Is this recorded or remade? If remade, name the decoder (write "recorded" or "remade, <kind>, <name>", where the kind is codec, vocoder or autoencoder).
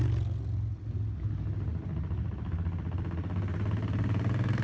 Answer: recorded